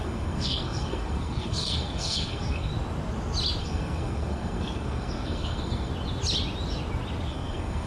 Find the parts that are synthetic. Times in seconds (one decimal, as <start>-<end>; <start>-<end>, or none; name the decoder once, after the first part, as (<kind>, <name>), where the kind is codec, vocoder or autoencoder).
0.0-2.7 (codec, SNAC); 3.6-5.9; 7.3-7.9